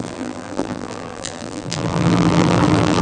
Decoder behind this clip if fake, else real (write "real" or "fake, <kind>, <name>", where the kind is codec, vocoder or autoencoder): fake, vocoder, BigVGAN v2